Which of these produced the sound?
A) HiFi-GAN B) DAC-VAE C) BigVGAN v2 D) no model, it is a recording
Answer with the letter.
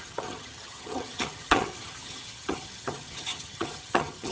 A